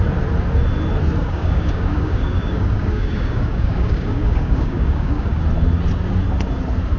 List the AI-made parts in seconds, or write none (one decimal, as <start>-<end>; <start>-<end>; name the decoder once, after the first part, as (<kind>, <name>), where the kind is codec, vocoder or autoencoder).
1.2-5.4 (codec, DAC)